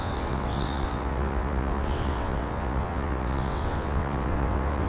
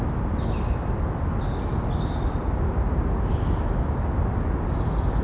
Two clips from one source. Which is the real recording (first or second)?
second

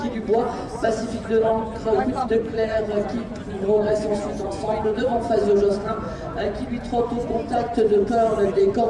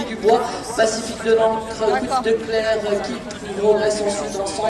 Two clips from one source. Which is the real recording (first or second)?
second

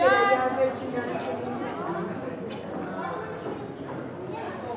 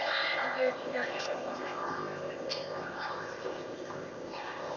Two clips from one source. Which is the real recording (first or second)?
first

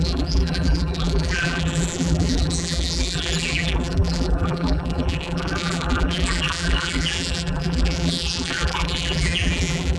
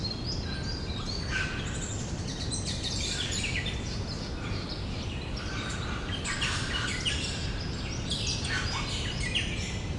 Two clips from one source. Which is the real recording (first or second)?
second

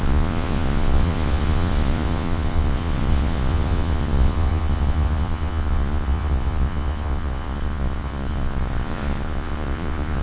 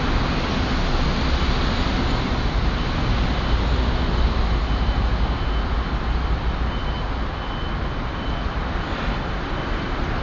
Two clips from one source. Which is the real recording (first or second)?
second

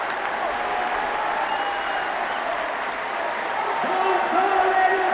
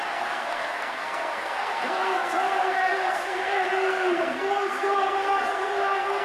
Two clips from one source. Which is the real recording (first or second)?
first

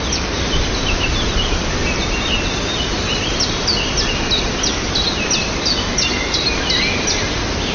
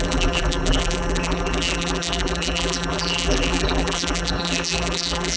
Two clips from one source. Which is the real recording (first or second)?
first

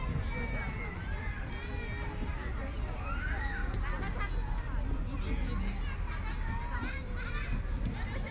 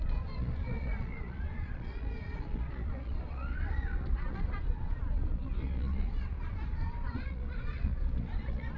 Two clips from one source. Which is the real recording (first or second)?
first